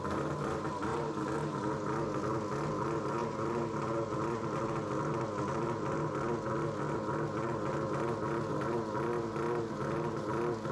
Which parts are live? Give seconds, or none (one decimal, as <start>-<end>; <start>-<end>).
0.0-10.7